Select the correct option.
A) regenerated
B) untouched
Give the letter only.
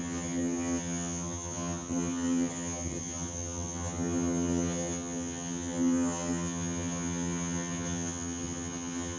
A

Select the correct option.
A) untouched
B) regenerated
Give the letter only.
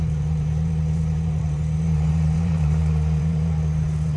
B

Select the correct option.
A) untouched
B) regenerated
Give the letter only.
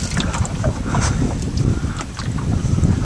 A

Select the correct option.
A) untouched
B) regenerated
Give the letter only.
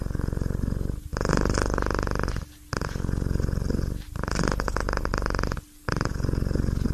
A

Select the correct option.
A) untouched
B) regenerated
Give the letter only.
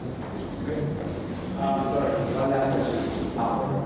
A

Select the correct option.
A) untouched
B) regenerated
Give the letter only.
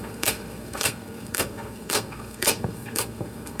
B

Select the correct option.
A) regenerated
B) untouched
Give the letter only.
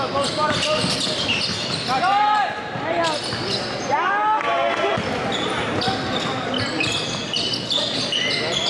B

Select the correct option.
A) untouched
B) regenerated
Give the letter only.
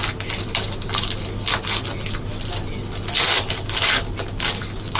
A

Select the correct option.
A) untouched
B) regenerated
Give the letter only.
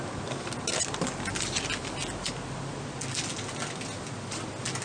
A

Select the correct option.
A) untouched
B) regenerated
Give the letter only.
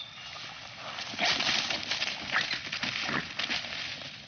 A